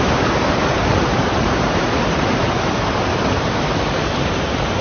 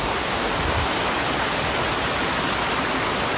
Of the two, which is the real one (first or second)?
second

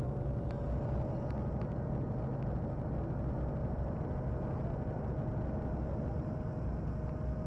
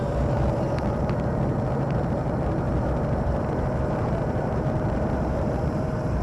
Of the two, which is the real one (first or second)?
first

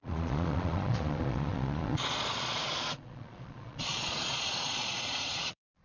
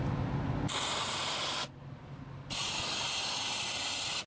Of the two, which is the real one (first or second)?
second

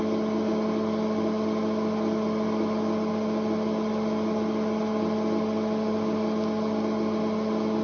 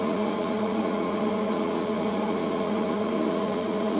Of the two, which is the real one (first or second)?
first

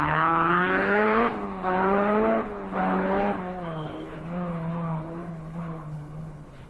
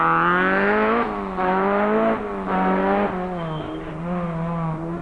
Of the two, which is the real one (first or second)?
second